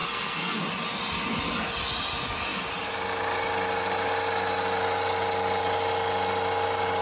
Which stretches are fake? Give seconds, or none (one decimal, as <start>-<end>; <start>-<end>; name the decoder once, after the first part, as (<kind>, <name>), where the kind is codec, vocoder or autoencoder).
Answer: 0.0-0.6 (codec, SNAC)